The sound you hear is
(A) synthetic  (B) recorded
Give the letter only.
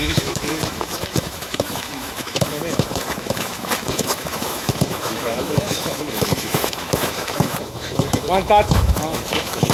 A